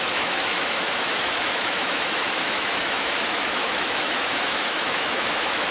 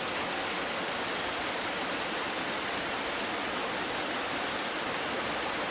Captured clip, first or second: second